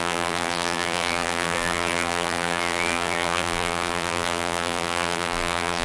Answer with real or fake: fake